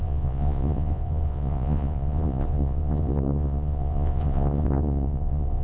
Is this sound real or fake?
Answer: fake